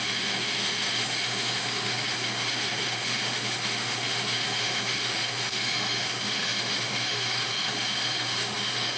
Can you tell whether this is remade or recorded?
remade